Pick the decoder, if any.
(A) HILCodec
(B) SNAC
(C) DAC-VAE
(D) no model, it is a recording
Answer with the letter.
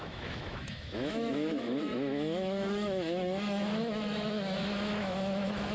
C